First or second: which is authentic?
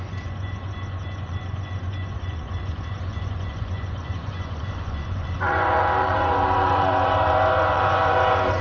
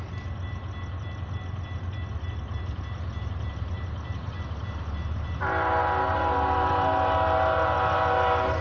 second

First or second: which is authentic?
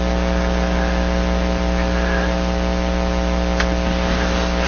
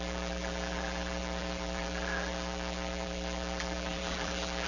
first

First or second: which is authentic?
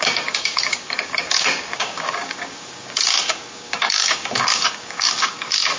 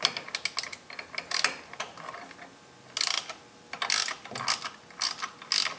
second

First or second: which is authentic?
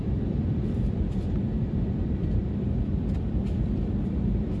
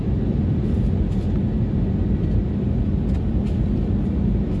second